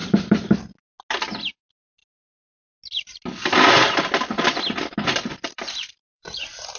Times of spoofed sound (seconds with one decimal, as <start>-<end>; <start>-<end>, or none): 5.3-6.8